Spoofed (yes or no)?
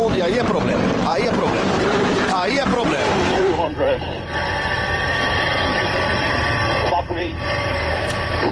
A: yes